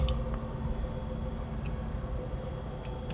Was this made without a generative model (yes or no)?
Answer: yes